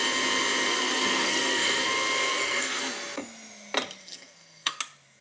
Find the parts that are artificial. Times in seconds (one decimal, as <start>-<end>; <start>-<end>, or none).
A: 0.7-1.9; 2.3-2.8; 4.0-4.8